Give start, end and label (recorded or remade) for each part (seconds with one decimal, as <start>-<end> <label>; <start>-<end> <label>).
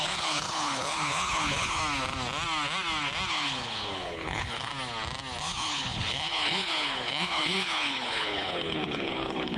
0.0-1.8 remade; 1.8-3.3 recorded; 3.3-4.7 remade; 4.7-5.4 recorded; 5.4-9.6 remade